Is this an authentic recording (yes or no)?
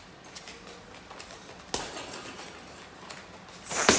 yes